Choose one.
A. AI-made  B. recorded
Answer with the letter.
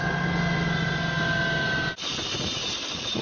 B